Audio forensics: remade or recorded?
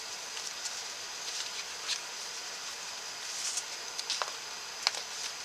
recorded